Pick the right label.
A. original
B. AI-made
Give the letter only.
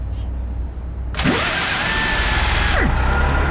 A